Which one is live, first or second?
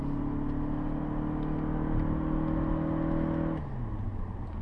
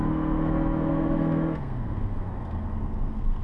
first